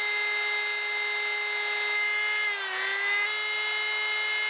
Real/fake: real